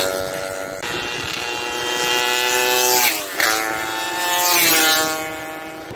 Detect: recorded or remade recorded